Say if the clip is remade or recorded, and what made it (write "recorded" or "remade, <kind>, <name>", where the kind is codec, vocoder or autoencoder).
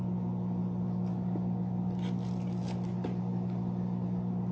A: recorded